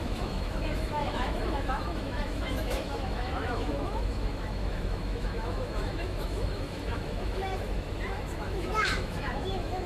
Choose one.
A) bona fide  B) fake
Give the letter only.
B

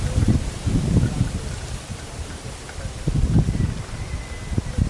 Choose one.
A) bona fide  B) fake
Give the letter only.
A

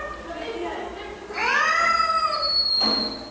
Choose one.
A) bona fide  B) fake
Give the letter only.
B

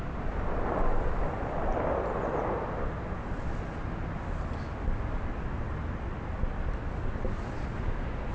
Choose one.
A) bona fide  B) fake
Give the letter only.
A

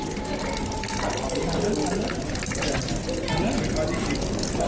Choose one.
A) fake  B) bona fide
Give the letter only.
B